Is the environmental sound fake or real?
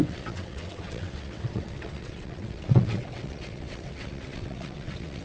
fake